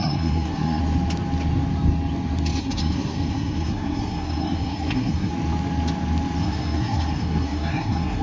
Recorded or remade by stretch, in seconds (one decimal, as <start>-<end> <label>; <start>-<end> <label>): 0.0-0.8 remade; 0.8-2.6 recorded; 2.6-5.3 remade; 5.3-6.4 recorded; 6.4-8.2 remade